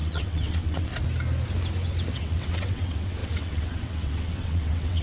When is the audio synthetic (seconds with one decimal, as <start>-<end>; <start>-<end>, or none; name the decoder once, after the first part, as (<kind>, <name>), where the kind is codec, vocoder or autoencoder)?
0.0-0.9 (vocoder, WaveNeXt); 2.1-5.0